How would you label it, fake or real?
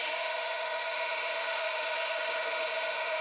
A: fake